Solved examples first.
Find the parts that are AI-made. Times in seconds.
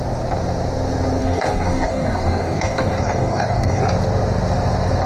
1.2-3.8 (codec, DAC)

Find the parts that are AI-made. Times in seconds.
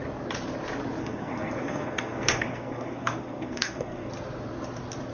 1.0-4.1 (codec, SNAC)